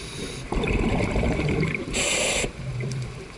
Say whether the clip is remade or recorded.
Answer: remade